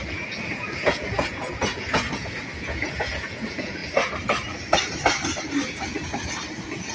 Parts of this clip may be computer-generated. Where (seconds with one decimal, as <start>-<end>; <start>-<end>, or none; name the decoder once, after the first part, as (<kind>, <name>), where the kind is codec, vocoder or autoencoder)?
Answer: 0.0-3.8 (vocoder, Vocos)